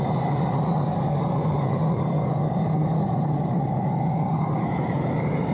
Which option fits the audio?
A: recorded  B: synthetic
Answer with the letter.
B